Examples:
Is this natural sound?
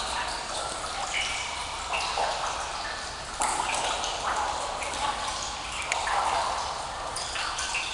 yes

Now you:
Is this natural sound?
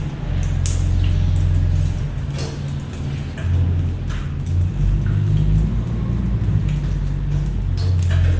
yes